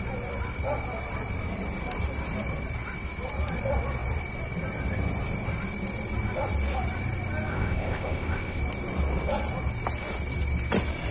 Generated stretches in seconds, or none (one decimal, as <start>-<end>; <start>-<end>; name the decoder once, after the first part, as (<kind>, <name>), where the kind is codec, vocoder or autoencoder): 7.5-8.6 (codec, ZipCodec)